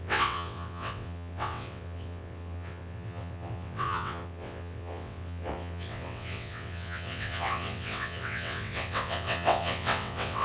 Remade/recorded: remade